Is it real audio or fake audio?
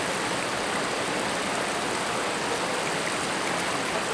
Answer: real